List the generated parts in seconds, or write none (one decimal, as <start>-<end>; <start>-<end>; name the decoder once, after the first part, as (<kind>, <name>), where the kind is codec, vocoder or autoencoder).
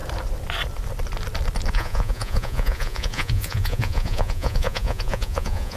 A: 1.7-5.8 (vocoder, Vocos)